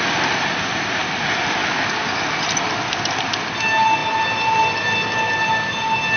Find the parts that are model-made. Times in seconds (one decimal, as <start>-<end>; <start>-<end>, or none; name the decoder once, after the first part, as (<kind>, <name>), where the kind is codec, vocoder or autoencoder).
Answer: none

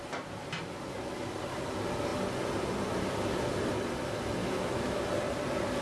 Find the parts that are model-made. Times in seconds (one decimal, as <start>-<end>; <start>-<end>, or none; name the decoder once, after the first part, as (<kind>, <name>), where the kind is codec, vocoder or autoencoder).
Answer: 4.4-5.0 (autoencoder, DAC-VAE)

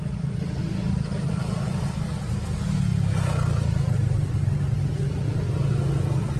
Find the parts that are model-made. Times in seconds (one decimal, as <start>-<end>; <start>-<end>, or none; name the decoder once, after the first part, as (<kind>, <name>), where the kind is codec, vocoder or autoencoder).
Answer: none

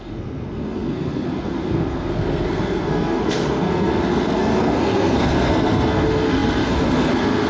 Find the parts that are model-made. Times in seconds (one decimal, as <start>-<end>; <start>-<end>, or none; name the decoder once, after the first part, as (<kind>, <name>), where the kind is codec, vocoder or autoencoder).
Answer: 0.0-7.5 (codec, SNAC)

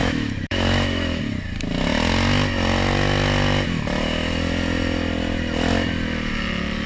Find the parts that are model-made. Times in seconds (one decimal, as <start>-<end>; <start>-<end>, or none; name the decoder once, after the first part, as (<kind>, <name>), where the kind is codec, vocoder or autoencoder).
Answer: 0.0-1.2 (autoencoder, DAC-VAE)

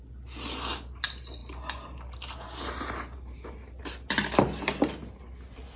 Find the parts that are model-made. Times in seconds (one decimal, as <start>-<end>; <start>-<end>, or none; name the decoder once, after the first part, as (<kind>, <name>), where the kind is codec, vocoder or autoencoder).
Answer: none

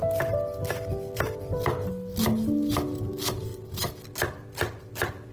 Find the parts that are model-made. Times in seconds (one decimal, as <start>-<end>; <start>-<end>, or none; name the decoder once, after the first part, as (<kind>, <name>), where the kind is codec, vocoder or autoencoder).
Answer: none